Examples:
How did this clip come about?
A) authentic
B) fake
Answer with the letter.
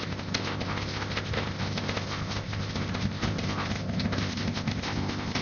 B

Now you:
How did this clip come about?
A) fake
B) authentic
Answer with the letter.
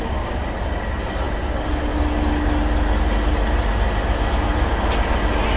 B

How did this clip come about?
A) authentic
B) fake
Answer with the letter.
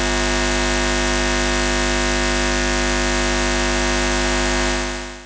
A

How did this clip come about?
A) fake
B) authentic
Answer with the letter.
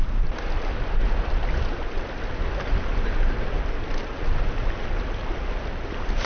B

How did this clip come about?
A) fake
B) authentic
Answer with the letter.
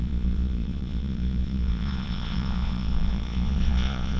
A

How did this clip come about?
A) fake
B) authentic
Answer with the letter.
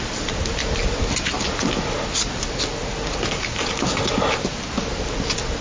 B